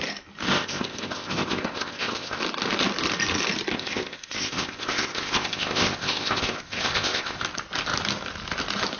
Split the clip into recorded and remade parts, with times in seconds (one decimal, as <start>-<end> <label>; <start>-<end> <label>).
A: 0.0-0.4 recorded; 0.4-2.4 remade; 2.4-3.7 recorded; 3.7-7.4 remade; 7.4-9.0 recorded